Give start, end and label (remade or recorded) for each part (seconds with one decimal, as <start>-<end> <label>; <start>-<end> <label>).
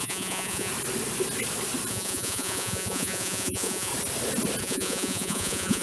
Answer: 0.0-0.7 remade; 0.7-1.9 recorded; 1.9-3.9 remade; 3.9-4.6 recorded; 4.6-5.8 remade